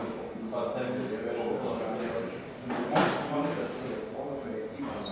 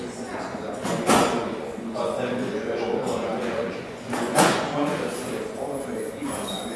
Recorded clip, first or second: first